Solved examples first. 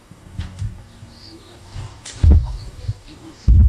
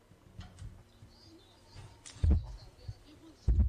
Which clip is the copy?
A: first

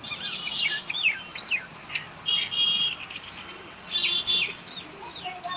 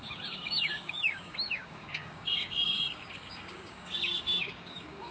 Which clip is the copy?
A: second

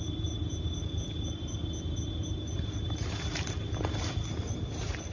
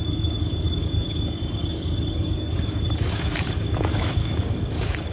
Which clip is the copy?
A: second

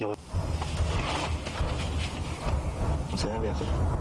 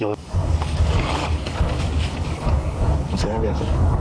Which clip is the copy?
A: second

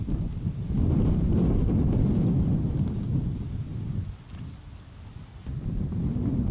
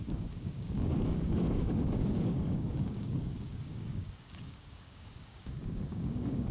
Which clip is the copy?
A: second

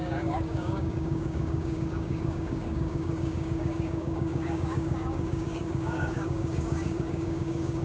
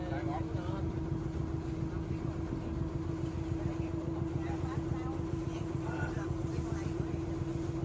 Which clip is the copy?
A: first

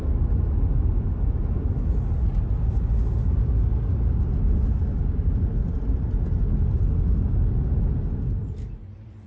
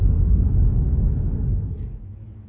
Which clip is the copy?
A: second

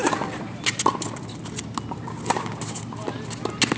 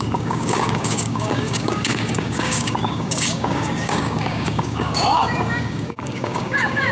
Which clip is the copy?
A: second